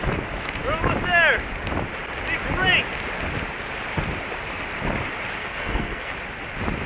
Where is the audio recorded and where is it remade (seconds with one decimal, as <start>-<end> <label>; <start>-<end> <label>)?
0.0-5.4 recorded; 5.4-6.1 remade; 6.1-6.9 recorded